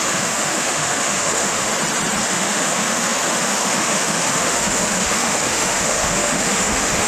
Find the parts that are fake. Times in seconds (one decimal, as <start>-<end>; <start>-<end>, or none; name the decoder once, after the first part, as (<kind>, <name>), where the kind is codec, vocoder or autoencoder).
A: 0.0-1.7 (autoencoder, DAC-VAE); 2.2-7.1